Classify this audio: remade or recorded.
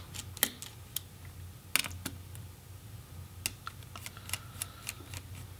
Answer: recorded